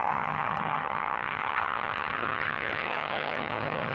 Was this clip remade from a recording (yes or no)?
yes